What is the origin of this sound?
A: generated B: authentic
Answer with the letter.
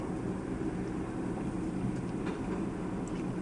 B